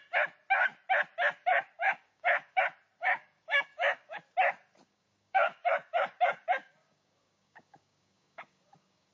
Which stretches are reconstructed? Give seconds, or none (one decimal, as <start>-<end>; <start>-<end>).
1.5-2.6; 3.0-4.2; 4.8-9.1